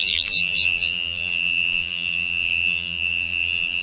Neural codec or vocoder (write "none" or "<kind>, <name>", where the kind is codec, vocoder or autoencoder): vocoder, BigVGAN v2